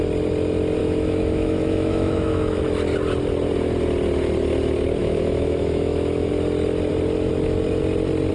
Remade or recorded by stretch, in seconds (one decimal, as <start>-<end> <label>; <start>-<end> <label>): 0.0-0.8 recorded; 0.8-2.6 remade; 2.6-5.0 recorded; 5.0-6.3 remade; 6.3-8.3 recorded

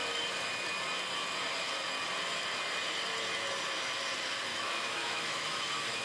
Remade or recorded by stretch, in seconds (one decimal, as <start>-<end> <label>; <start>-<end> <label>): 0.0-4.5 recorded; 4.5-5.6 remade; 5.6-6.0 recorded

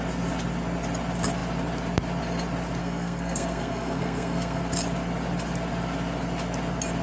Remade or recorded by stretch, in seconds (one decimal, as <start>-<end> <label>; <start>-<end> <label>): 0.0-2.8 recorded; 2.8-4.6 remade; 4.6-7.0 recorded

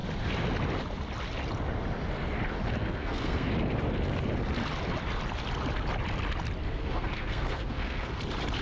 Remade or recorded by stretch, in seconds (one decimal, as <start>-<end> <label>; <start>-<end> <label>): 0.0-2.8 recorded; 2.8-3.5 remade; 3.5-6.6 recorded; 6.6-8.2 remade; 8.2-8.6 recorded